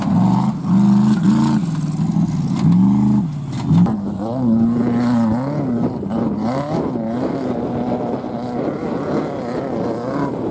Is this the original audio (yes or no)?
yes